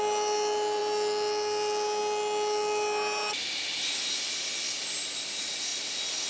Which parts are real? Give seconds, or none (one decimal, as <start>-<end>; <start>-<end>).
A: 0.0-6.3